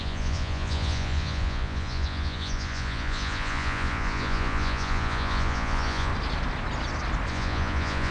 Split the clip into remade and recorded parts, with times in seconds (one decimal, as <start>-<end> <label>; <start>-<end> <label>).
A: 0.0-6.1 remade; 6.1-7.3 recorded; 7.3-8.1 remade